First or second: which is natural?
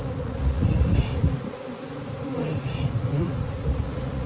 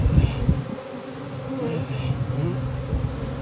second